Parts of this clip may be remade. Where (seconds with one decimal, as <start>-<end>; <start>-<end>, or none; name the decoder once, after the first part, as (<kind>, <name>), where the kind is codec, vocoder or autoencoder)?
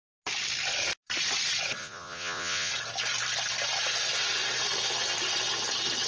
1.8-2.7 (vocoder, Vocos)